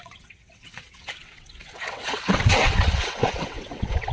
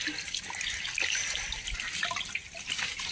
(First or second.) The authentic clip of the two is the second